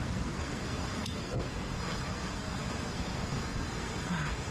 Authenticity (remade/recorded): remade